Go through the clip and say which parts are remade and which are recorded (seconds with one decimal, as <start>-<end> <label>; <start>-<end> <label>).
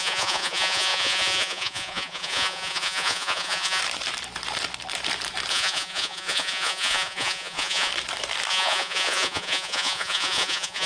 0.0-3.8 remade; 3.8-5.5 recorded; 5.5-7.9 remade; 7.9-8.5 recorded; 8.5-10.9 remade